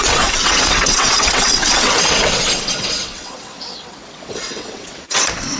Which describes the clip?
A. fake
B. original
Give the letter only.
A